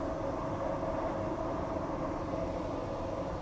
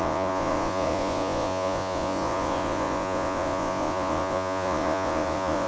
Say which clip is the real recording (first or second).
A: first